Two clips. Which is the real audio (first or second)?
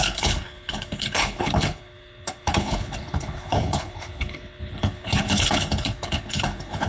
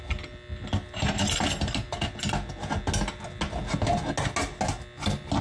second